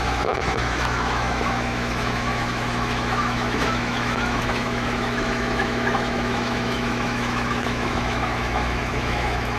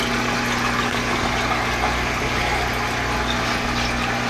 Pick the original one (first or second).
second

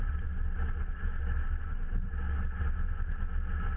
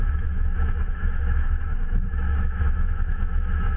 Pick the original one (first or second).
first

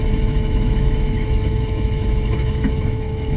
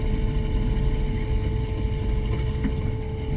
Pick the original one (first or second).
second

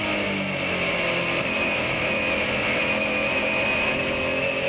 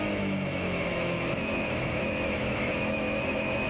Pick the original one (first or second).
first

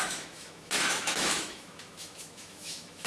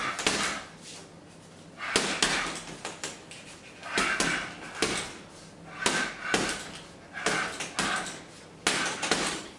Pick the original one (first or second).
second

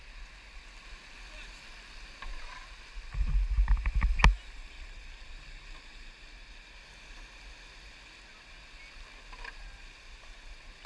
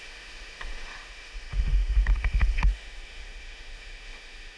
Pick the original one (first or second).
first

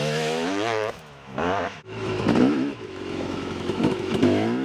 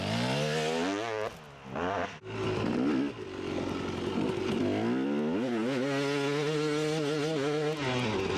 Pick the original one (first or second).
second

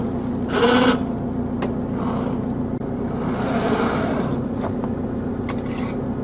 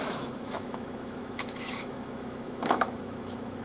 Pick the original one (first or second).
first